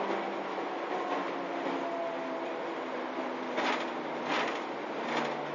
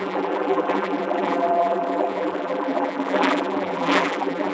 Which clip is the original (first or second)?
first